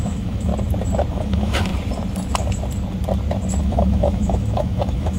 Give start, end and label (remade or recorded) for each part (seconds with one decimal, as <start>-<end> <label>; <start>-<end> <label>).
0.0-0.5 remade; 0.5-1.1 recorded; 1.1-1.7 remade; 1.7-3.6 recorded; 3.6-5.2 remade